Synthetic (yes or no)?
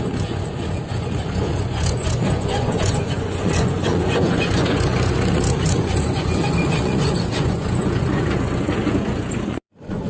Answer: yes